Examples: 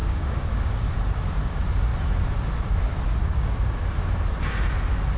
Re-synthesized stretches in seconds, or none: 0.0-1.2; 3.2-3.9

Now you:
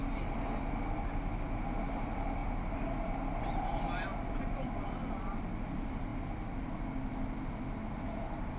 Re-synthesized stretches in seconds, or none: none

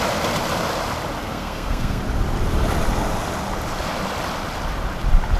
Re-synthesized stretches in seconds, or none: 1.2-2.0